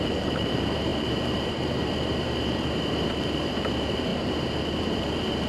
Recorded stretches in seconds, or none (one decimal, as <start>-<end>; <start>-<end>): 4.1-4.8